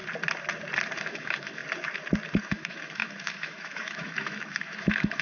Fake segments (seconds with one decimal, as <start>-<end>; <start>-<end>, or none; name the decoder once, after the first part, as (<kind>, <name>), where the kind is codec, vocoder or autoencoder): 1.0-1.6 (autoencoder, DAC-VAE); 2.4-5.2